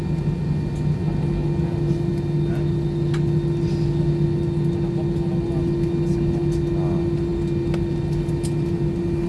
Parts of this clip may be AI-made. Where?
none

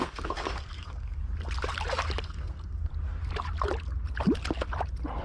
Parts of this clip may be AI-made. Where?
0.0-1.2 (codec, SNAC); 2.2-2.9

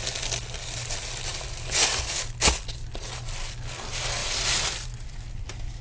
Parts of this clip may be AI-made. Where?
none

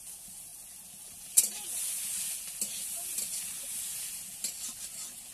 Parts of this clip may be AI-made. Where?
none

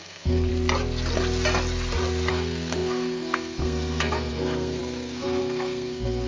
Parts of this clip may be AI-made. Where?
0.0-0.5 (codec, SNAC); 2.3-6.3

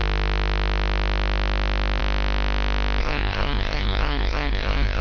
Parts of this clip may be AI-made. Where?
3.0-5.0 (codec, SNAC)

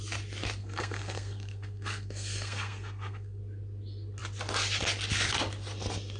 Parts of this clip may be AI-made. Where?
0.6-3.4 (codec, SNAC)